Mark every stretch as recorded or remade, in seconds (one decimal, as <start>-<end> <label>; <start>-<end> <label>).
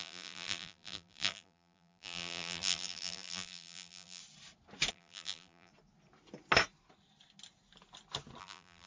0.0-4.2 remade; 4.2-4.9 recorded; 4.9-5.7 remade; 5.7-8.4 recorded; 8.4-8.9 remade